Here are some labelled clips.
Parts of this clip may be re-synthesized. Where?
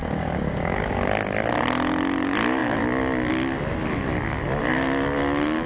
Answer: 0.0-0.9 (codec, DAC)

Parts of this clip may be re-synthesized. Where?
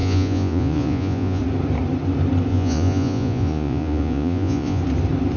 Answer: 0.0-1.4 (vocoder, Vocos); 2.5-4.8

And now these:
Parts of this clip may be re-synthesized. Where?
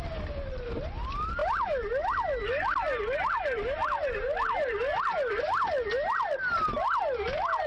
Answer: none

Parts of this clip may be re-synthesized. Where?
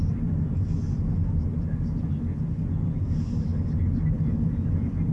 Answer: none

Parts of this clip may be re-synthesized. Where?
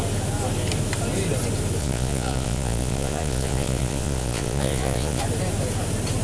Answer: 1.8-5.2 (vocoder, Vocos)